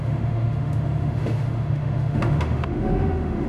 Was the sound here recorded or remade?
remade